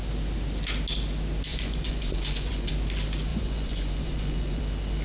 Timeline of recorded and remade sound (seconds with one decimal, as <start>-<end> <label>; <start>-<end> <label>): 0.0-1.5 recorded; 1.5-2.7 remade; 2.7-3.3 recorded; 3.3-4.6 remade; 4.6-5.0 recorded